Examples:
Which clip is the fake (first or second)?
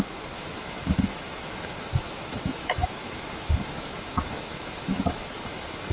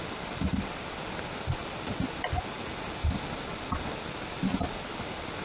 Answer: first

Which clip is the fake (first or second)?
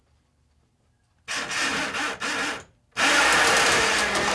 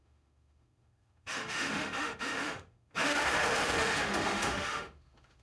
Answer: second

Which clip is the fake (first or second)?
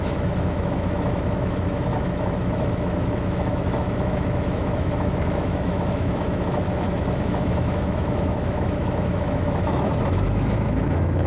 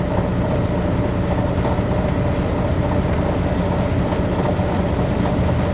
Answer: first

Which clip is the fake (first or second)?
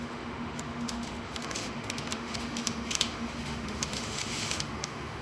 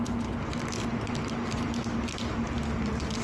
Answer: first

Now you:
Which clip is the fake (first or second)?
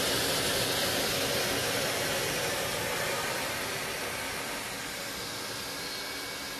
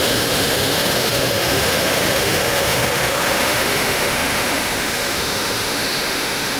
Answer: second